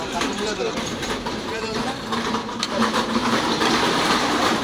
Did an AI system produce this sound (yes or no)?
yes